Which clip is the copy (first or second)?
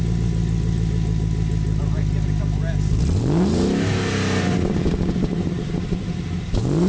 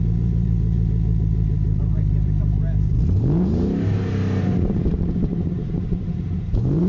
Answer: second